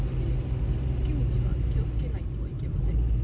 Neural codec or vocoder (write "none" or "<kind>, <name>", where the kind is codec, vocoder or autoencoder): none